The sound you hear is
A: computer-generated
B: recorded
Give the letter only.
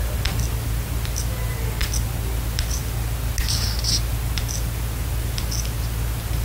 B